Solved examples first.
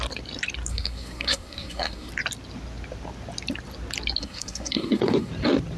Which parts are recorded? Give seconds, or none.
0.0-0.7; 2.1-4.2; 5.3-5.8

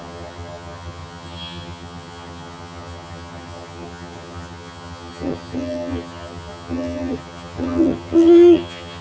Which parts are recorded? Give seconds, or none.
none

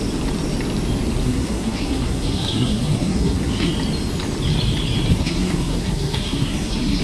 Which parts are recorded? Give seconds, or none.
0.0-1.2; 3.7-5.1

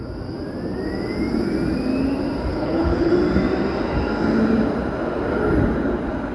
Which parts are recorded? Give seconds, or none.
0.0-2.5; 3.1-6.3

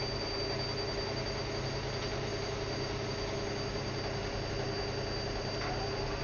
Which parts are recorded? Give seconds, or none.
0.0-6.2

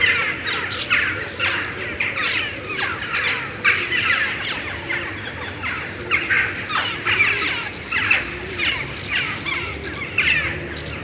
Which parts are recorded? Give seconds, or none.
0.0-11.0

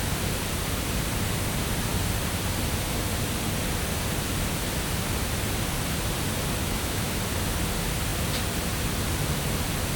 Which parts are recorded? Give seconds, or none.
0.0-6.6; 7.2-10.0

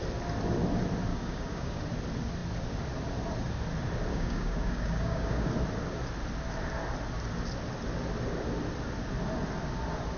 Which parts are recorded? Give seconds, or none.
0.0-1.1; 1.8-4.1; 5.5-10.2